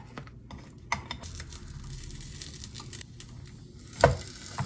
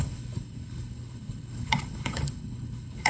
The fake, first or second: second